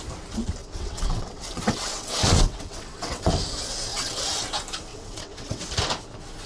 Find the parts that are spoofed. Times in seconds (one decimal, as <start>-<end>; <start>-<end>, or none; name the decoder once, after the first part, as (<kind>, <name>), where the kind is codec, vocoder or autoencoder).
0.6-3.3 (vocoder, WaveNeXt); 3.9-4.4; 4.9-5.6